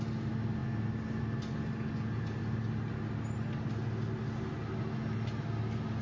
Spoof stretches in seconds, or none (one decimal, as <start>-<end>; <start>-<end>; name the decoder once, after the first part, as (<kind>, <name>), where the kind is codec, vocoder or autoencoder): none